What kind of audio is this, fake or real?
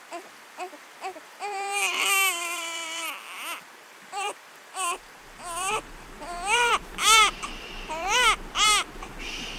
fake